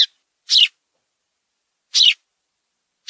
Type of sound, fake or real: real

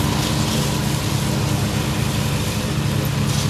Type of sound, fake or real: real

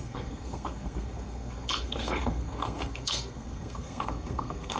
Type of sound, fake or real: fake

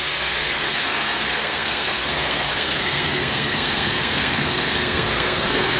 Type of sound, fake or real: fake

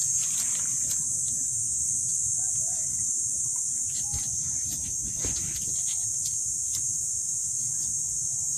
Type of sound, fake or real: real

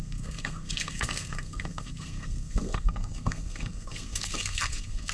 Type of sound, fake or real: fake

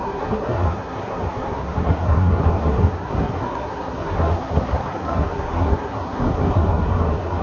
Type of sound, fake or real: fake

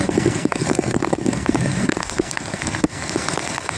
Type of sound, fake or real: fake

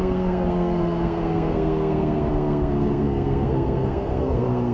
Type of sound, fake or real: fake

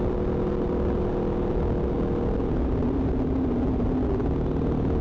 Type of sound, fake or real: real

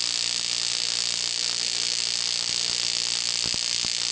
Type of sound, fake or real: real